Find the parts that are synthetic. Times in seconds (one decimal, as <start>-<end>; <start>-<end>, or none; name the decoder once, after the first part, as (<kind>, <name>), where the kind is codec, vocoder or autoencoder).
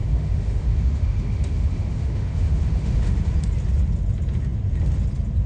0.0-3.3 (autoencoder, DAC-VAE)